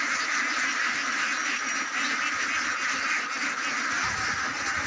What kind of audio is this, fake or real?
real